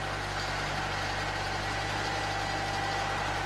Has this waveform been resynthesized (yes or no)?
no